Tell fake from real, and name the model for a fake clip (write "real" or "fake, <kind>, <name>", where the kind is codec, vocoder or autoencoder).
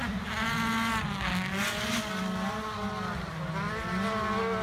real